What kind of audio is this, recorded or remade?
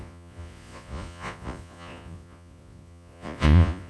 remade